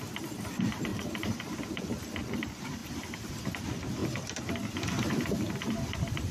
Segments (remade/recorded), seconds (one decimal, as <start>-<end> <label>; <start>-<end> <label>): 0.0-0.9 remade; 0.9-1.6 recorded; 1.6-2.8 remade; 2.8-3.4 recorded; 3.4-4.0 remade; 4.0-5.6 recorded; 5.6-6.3 remade